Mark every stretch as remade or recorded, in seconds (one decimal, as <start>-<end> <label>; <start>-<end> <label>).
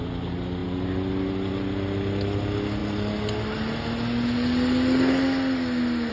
0.0-6.1 recorded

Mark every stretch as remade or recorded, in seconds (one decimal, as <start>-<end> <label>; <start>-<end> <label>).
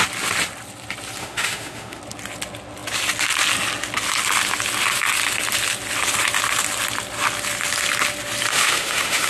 0.0-1.2 recorded; 1.2-2.0 remade; 2.0-8.5 recorded; 8.5-9.3 remade